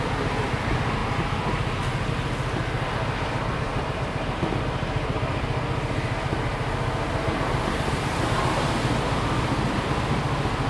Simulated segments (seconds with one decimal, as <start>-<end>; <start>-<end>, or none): 1.0-2.1